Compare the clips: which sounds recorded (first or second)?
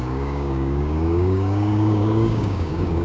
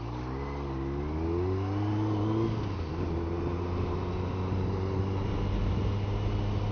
second